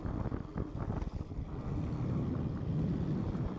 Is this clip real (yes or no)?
yes